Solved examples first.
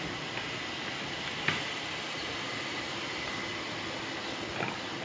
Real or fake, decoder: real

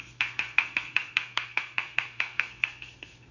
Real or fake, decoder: fake, codec, SNAC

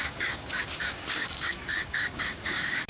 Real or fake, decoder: fake, codec, DAC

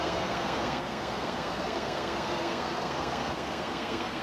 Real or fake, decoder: fake, codec, SNAC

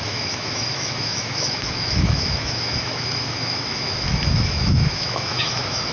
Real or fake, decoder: fake, autoencoder, DAC-VAE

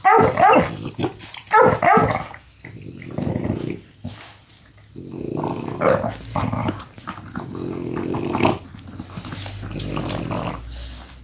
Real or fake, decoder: real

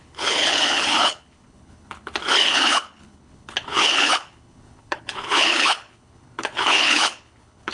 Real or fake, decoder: fake, codec, HILCodec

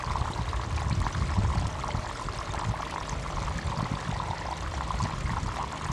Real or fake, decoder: real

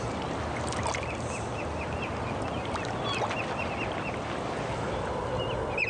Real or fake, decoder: real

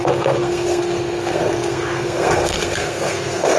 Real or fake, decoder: fake, codec, SNAC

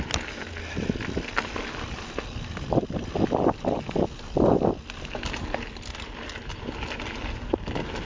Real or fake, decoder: real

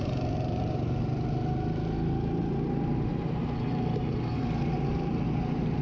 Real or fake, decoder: real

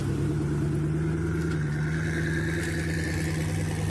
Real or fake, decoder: real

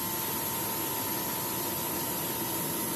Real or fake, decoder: real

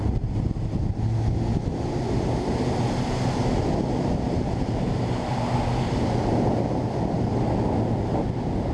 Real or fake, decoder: real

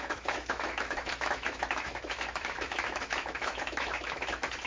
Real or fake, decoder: fake, autoencoder, DAC-VAE